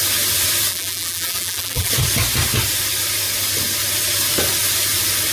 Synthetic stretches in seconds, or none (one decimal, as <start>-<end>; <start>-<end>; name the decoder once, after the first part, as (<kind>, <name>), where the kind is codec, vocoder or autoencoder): 0.7-1.9 (vocoder, BigVGAN v2)